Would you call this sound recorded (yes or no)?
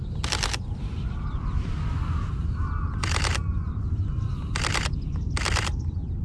yes